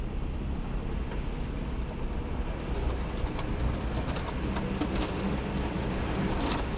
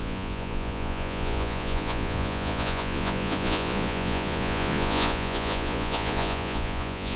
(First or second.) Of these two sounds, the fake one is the second